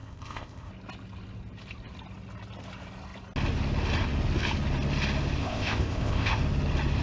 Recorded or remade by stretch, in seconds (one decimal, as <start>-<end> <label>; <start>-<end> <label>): 0.0-0.7 remade; 0.7-5.4 recorded; 5.4-6.4 remade; 6.4-7.0 recorded